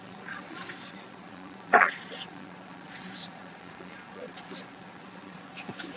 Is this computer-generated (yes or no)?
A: yes